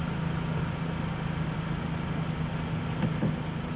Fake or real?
real